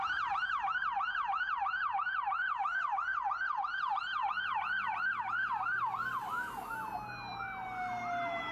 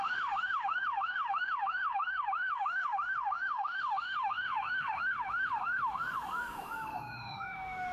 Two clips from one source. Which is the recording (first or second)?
first